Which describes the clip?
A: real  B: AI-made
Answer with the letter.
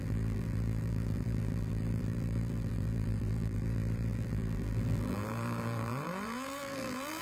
B